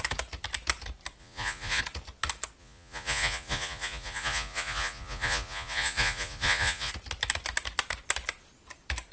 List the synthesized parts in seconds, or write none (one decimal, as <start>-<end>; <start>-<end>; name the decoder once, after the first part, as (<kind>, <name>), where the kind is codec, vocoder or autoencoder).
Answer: 1.2-1.8 (vocoder, Vocos); 2.6-6.9